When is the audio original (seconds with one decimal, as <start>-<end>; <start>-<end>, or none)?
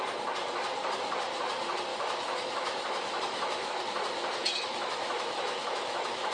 0.0-1.9; 3.8-4.4